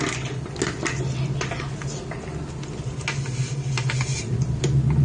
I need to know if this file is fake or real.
real